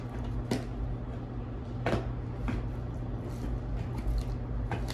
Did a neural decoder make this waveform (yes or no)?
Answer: no